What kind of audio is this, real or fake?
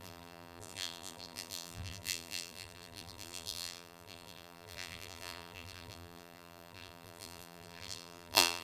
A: fake